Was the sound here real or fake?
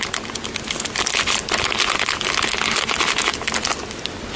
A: real